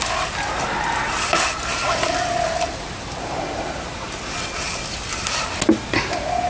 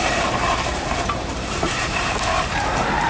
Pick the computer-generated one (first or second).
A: second